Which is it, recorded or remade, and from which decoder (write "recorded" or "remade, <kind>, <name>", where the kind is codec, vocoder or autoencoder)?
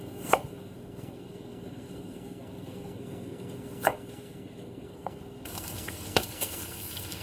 remade, codec, SNAC